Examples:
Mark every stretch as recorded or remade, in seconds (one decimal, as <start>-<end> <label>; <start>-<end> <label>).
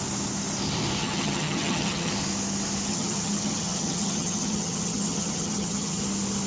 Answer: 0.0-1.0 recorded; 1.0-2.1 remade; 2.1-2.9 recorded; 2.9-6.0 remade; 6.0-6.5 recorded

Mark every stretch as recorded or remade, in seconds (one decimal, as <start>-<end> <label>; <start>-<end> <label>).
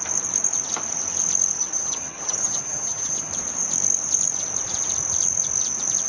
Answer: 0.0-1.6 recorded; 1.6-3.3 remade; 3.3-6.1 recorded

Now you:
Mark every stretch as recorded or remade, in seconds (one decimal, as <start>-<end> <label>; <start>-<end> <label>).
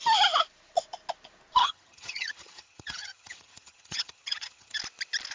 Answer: 0.0-1.6 recorded; 1.6-4.8 remade; 4.8-5.3 recorded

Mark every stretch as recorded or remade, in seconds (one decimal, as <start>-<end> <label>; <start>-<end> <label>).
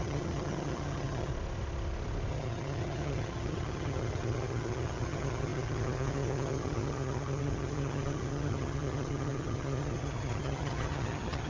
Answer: 0.0-1.3 remade; 1.3-2.3 recorded; 2.3-11.5 remade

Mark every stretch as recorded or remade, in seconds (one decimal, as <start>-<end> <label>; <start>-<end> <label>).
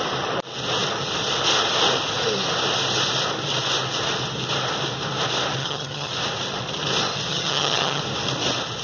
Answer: 0.0-5.6 recorded; 5.6-6.1 remade; 6.1-7.3 recorded; 7.3-8.0 remade; 8.0-8.8 recorded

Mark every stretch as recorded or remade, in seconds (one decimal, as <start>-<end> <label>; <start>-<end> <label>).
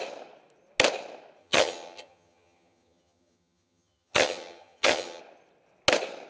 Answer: 0.0-1.4 recorded; 1.4-5.2 remade; 5.2-6.3 recorded